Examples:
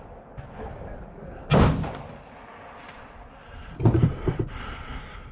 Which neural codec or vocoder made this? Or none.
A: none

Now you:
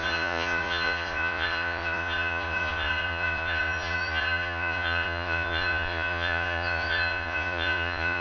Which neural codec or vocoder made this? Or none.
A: vocoder, Vocos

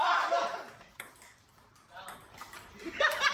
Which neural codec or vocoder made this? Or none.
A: vocoder, BigVGAN v2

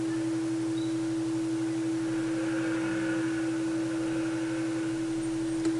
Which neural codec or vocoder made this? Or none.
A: none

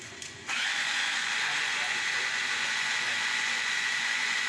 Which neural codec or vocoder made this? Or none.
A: vocoder, Vocos